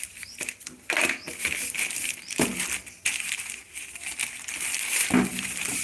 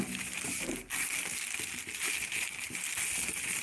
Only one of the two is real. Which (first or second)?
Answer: second